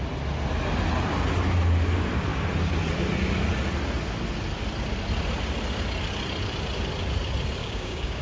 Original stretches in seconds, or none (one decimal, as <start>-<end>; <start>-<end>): 0.0-7.6